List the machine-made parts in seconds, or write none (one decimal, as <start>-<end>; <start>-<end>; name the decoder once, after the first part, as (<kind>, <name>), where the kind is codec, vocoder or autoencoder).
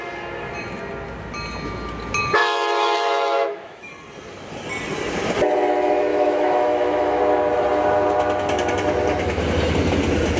2.4-3.9 (autoencoder, DAC-VAE); 6.1-7.2